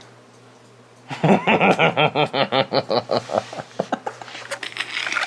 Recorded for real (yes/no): yes